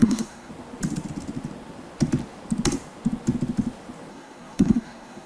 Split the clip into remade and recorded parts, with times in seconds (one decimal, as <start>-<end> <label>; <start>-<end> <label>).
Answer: 0.0-0.5 remade; 0.5-4.1 recorded; 4.1-5.3 remade